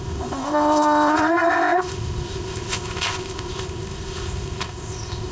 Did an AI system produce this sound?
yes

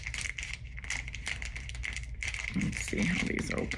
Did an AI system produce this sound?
yes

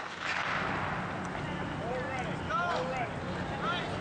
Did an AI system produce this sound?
no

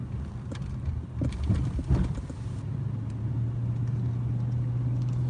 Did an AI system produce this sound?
no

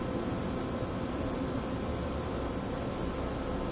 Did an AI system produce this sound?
no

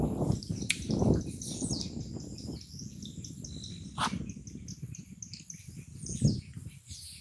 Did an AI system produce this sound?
no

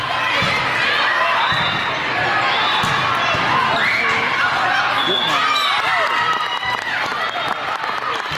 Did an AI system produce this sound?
no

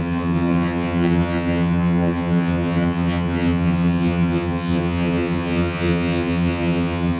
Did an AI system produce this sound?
yes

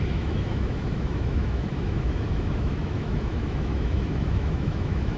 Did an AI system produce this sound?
yes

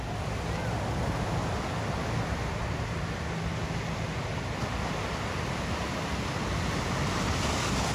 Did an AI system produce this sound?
no